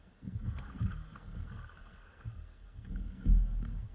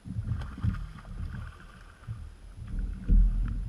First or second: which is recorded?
second